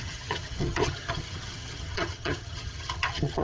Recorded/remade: remade